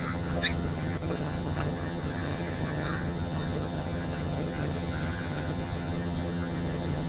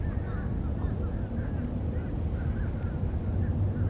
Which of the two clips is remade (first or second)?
first